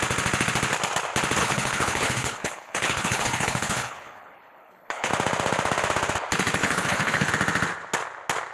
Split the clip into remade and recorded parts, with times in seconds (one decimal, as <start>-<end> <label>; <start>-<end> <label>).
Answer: 0.0-1.4 recorded; 1.4-5.1 remade; 5.1-6.6 recorded; 6.6-7.3 remade; 7.3-8.5 recorded